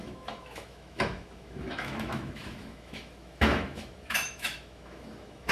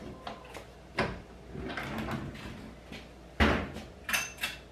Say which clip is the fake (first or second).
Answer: first